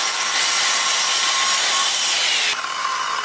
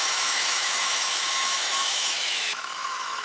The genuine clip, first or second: first